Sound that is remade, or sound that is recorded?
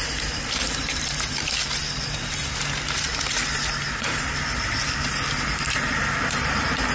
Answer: recorded